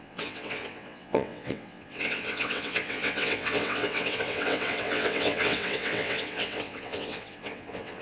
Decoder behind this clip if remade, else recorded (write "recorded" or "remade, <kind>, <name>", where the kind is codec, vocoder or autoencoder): remade, vocoder, WaveNeXt